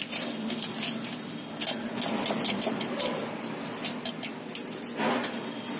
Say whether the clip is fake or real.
real